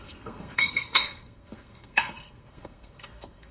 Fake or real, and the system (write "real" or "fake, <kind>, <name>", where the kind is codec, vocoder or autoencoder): fake, codec, SNAC